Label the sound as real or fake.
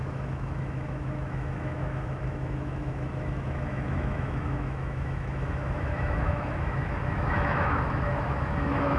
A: fake